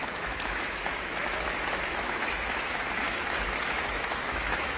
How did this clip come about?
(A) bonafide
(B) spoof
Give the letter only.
B